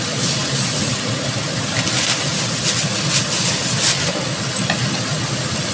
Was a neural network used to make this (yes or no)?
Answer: no